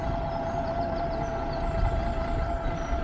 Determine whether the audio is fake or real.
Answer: real